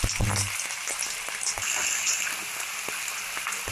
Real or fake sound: real